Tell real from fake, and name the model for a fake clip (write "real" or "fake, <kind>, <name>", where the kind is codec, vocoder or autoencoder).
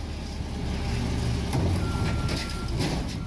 real